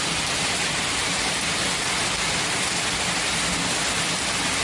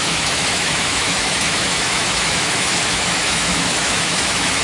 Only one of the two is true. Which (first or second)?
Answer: first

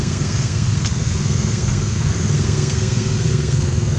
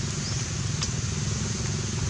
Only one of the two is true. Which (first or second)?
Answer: second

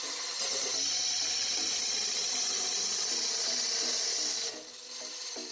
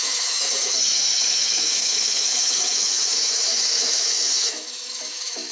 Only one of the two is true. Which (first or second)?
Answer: first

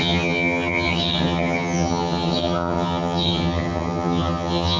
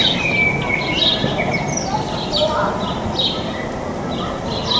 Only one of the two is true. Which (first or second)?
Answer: second